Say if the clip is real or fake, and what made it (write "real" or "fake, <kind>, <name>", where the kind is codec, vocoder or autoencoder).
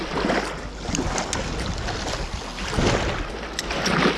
real